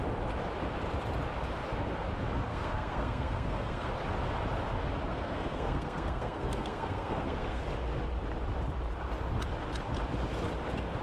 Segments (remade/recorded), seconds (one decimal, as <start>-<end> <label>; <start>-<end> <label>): 0.0-2.5 recorded; 2.5-3.9 remade; 3.9-5.1 recorded; 5.1-7.6 remade; 7.6-11.0 recorded